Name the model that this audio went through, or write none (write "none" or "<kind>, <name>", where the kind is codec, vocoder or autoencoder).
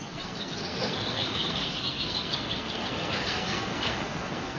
codec, SNAC